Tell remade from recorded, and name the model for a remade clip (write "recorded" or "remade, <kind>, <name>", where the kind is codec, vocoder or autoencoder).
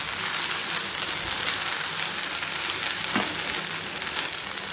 recorded